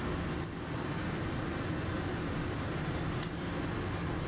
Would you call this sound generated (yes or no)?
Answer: no